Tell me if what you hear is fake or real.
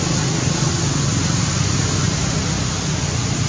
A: real